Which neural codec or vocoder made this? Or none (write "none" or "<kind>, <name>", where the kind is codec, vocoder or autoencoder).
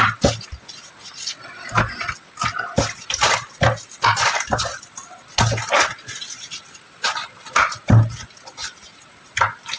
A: none